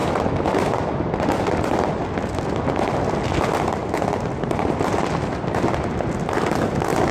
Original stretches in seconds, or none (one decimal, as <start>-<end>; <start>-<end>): 0.0-7.1